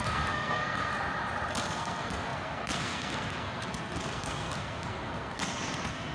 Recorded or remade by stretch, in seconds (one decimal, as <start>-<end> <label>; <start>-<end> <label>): 0.0-0.9 remade; 0.9-1.5 recorded; 1.5-6.1 remade